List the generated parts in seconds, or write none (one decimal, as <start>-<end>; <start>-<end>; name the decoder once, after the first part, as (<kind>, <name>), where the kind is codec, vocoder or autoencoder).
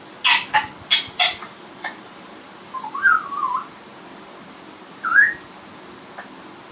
1.4-2.3 (vocoder, BigVGAN v2)